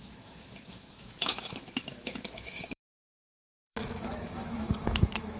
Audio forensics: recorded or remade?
remade